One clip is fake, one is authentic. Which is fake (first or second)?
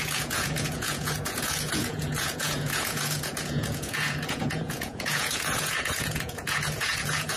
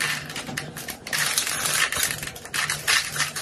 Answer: first